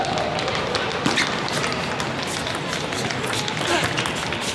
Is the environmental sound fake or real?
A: real